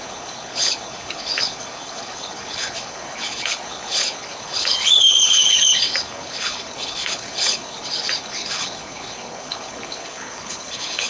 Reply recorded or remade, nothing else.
remade